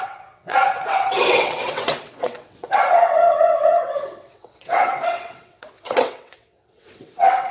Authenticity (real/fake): fake